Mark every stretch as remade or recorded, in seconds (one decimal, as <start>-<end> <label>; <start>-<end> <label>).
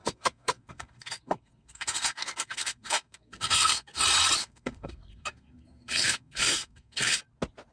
0.0-4.0 remade; 4.0-4.4 recorded; 4.4-7.2 remade; 7.2-7.7 recorded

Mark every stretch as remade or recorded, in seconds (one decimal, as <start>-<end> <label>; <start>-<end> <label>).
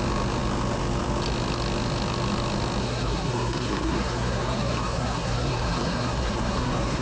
0.0-2.8 recorded; 2.8-7.0 remade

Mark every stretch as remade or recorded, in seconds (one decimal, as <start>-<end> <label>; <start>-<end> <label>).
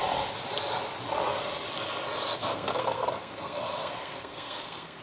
0.0-2.4 recorded; 2.4-5.0 remade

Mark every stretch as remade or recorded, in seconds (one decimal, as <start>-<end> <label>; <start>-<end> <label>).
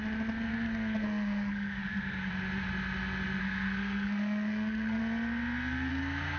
0.0-0.5 recorded; 0.5-2.3 remade; 2.3-3.4 recorded; 3.4-5.0 remade; 5.0-5.9 recorded; 5.9-6.4 remade